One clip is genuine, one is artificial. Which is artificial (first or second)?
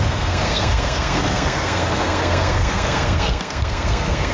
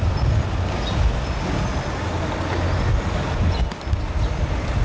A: first